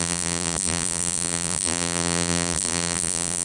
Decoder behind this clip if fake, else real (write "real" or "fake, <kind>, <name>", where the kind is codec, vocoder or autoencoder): fake, vocoder, BigVGAN v2